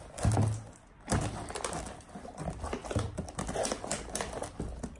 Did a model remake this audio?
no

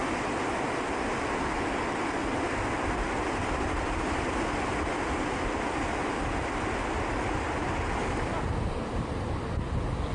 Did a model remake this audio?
no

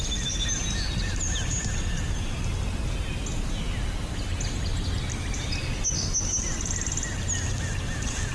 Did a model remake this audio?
no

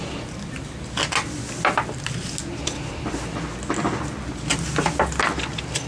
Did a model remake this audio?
no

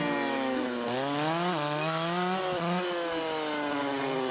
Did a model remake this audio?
no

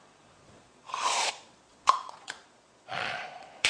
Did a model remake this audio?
yes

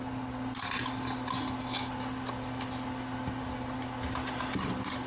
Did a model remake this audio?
no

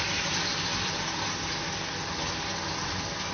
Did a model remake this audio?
no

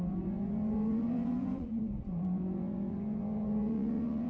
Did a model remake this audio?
yes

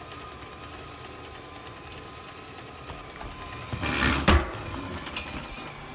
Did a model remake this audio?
no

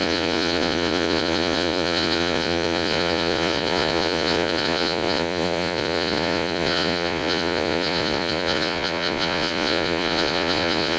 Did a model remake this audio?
yes